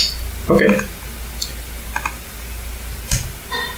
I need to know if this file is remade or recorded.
recorded